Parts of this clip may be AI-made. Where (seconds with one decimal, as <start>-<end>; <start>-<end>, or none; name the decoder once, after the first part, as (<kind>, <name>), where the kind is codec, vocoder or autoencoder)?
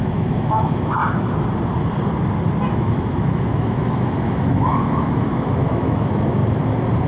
0.0-1.0 (autoencoder, DAC-VAE); 2.7-6.4